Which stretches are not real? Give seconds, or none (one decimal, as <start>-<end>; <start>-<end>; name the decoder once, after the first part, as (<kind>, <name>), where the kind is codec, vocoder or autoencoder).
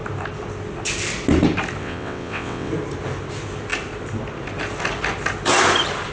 1.8-2.7 (vocoder, WaveNeXt)